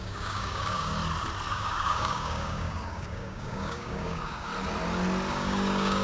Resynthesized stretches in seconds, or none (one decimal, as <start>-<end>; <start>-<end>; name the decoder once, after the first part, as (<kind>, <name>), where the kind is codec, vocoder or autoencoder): 0.0-1.0 (codec, DAC); 1.5-4.5; 5.3-6.0